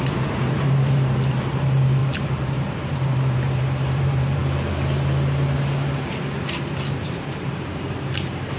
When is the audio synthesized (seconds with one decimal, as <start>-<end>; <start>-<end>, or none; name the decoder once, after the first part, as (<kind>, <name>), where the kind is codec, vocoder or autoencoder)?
0.0-4.4 (vocoder, BigVGAN v2); 7.0-8.6